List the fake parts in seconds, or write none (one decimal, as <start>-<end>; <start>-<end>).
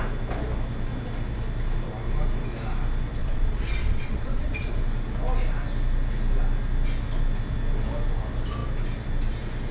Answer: 3.2-4.7